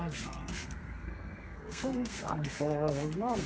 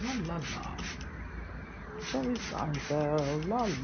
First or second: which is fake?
first